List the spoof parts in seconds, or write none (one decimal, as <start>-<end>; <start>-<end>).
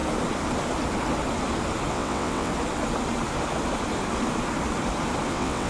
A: 1.9-2.5; 5.3-5.7